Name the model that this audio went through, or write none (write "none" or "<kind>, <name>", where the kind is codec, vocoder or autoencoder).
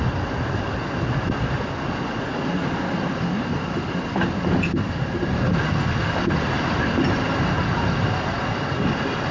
none